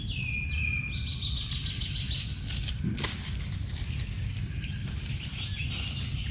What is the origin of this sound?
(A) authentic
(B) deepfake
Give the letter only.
A